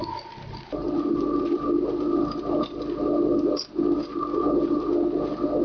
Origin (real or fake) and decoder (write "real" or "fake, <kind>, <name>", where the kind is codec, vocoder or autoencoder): real